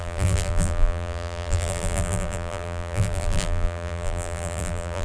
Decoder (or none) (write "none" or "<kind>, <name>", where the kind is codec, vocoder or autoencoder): vocoder, BigVGAN v2